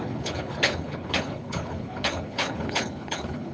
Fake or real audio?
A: fake